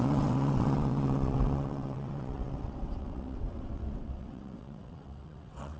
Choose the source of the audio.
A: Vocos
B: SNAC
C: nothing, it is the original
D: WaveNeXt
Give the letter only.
D